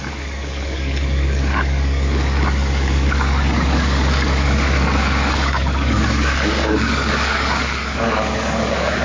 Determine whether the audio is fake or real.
fake